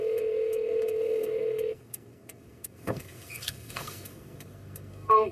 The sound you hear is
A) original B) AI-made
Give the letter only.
B